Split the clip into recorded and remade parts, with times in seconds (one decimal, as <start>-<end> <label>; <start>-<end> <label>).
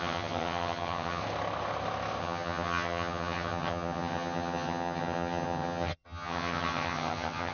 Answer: 0.0-1.2 remade; 1.2-2.2 recorded; 2.2-7.5 remade